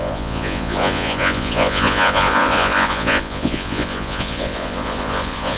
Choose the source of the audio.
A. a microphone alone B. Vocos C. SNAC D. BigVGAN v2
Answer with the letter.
B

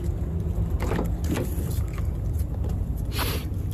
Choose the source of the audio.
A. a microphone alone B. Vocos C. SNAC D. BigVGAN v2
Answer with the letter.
A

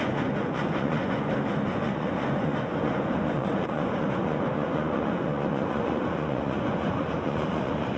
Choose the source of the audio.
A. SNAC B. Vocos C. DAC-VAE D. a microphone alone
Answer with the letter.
B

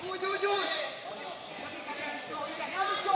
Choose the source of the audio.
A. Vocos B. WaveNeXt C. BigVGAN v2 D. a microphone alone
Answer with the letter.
A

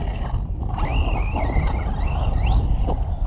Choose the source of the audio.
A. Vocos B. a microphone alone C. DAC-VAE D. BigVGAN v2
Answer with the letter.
B